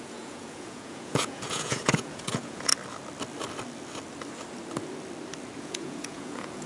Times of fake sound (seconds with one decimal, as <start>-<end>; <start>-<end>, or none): 0.0-2.7; 5.6-6.7